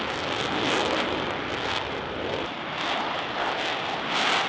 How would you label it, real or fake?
real